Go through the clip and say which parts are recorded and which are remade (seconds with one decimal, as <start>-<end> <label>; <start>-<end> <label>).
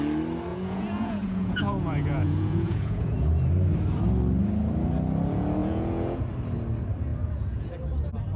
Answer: 0.0-0.5 recorded; 0.5-3.3 remade; 3.3-5.6 recorded; 5.6-6.2 remade; 6.2-7.1 recorded; 7.1-7.7 remade; 7.7-8.4 recorded